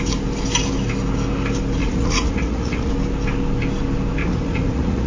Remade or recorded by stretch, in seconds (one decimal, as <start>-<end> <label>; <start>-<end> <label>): 0.0-1.8 recorded; 1.8-2.9 remade; 2.9-4.2 recorded; 4.2-5.1 remade